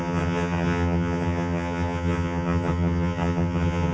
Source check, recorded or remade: remade